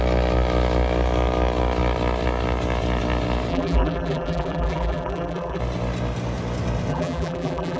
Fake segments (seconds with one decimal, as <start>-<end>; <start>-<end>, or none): 3.5-5.6; 6.9-7.8